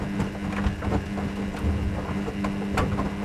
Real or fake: real